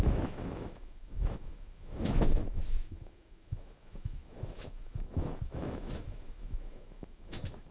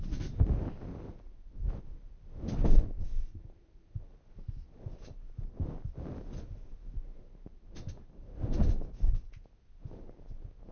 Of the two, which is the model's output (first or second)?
first